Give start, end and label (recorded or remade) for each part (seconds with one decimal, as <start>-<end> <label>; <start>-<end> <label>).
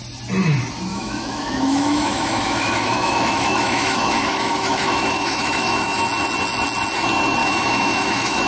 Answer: 0.0-0.9 recorded; 0.9-6.0 remade; 6.0-7.4 recorded; 7.4-8.5 remade